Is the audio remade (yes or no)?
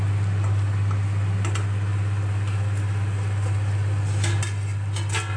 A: no